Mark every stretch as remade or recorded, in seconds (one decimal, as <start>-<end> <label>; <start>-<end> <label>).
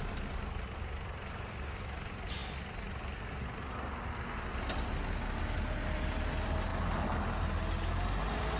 0.0-8.6 recorded